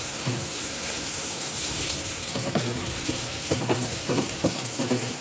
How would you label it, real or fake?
fake